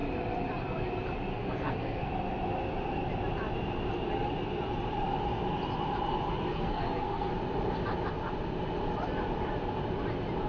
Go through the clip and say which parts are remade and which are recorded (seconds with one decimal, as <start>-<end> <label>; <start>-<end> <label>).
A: 0.0-1.3 recorded; 1.3-2.1 remade; 2.1-6.5 recorded; 6.5-7.3 remade; 7.3-10.5 recorded